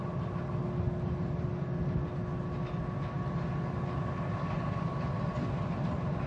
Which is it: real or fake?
real